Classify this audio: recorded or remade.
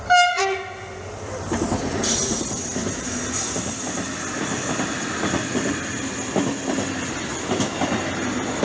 recorded